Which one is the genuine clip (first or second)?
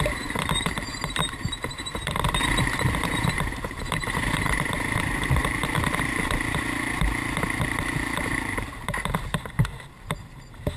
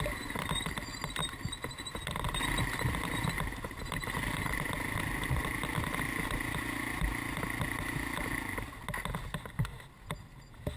second